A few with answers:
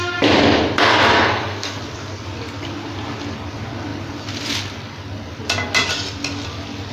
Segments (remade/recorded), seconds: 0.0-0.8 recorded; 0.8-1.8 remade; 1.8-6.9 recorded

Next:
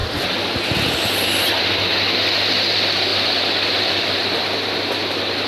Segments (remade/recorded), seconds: 0.0-5.5 recorded